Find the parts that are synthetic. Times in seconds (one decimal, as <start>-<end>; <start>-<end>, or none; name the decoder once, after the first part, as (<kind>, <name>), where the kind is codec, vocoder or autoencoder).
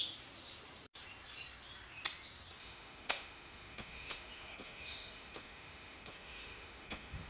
2.6-7.3 (autoencoder, DAC-VAE)